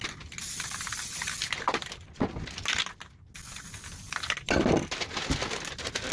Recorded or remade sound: recorded